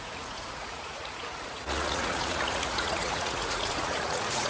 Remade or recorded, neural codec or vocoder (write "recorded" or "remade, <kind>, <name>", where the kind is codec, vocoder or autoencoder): remade, vocoder, Vocos